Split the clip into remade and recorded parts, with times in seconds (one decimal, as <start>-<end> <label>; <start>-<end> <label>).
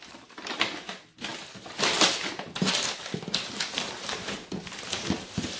0.0-5.6 recorded